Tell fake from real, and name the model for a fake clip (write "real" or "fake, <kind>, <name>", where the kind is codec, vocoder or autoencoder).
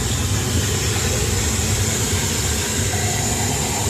real